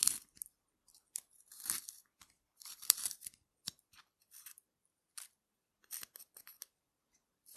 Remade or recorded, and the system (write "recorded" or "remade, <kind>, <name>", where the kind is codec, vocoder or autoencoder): remade, vocoder, BigVGAN v2